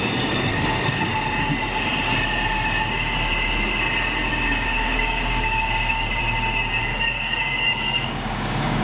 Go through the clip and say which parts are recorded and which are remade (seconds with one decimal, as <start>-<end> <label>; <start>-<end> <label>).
0.0-1.1 remade; 1.1-4.3 recorded; 4.3-6.2 remade; 6.2-6.8 recorded; 6.8-8.8 remade